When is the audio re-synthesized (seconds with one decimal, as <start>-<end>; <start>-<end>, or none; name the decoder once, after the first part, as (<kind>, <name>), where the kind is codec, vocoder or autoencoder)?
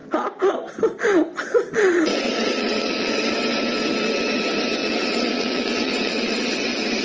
1.3-3.3 (vocoder, WaveNeXt); 4.8-6.5